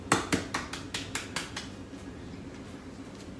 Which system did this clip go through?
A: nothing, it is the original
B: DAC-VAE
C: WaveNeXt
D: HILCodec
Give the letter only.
A